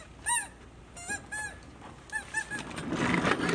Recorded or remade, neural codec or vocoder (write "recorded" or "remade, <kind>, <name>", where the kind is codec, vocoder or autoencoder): recorded